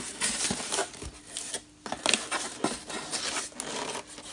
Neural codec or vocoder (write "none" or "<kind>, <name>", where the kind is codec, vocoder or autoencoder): none